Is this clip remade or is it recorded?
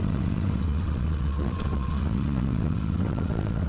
remade